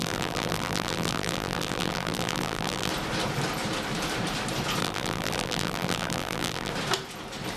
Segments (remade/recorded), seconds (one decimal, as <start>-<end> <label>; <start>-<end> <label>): 0.0-2.9 remade; 2.9-4.8 recorded; 4.8-6.7 remade; 6.7-7.6 recorded